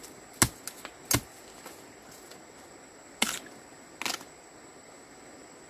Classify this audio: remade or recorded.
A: recorded